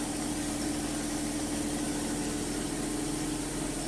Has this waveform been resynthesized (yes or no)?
no